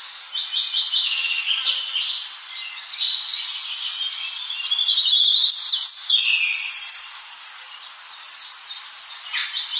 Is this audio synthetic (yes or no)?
no